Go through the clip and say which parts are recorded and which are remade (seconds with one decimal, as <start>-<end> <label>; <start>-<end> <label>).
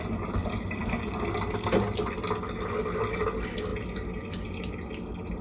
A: 0.0-0.4 recorded; 0.4-1.2 remade; 1.2-3.7 recorded; 3.7-4.9 remade; 4.9-5.4 recorded